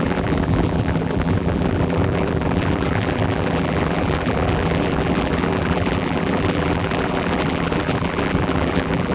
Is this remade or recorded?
remade